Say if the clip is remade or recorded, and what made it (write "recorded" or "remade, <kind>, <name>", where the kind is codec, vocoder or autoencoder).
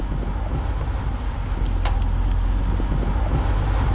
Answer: recorded